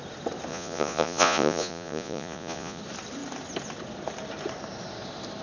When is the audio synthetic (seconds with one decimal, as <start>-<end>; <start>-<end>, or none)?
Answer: 0.5-2.8